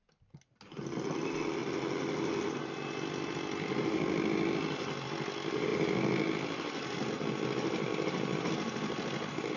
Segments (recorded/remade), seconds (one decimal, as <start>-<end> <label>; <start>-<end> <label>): 0.0-9.6 recorded